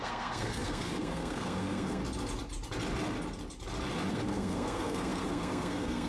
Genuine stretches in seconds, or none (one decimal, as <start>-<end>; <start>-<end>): 2.0-4.1

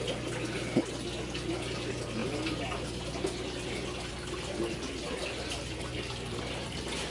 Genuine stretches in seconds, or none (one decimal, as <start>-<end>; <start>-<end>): 0.0-7.1